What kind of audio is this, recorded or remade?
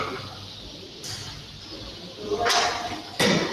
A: recorded